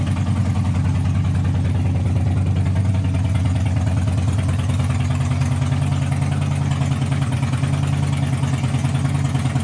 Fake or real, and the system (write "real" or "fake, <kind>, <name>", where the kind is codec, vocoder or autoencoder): real